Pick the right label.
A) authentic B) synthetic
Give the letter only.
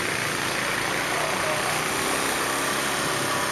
A